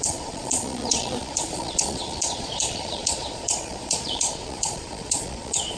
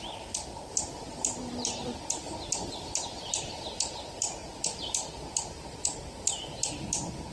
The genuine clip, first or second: second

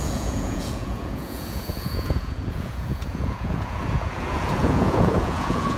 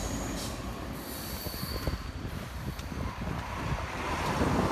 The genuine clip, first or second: second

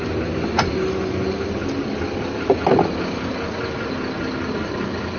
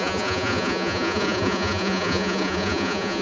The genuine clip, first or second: first